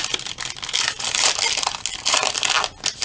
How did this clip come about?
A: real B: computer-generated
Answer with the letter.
A